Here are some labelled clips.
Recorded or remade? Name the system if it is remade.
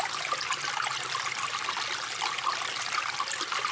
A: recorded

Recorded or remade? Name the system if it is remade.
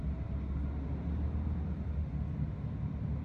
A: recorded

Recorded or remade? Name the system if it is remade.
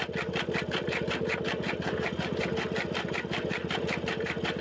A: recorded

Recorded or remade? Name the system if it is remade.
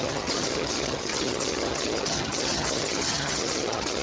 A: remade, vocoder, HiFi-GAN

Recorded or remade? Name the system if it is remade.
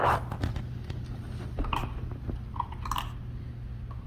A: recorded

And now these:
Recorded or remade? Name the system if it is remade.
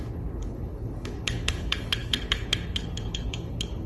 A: remade, codec, HILCodec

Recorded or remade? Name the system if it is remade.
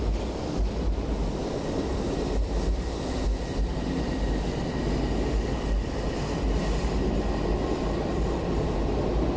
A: recorded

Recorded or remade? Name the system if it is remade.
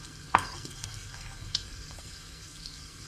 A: remade, codec, SNAC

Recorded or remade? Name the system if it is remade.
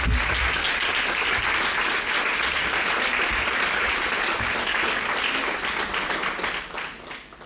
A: remade, vocoder, BigVGAN v2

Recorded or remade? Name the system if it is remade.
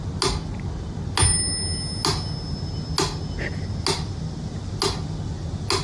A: recorded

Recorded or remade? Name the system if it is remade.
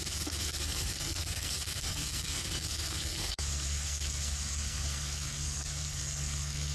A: remade, codec, SNAC